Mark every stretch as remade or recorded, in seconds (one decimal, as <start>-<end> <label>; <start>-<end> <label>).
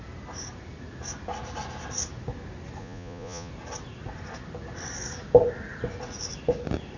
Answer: 0.0-2.8 recorded; 2.8-3.5 remade; 3.5-7.0 recorded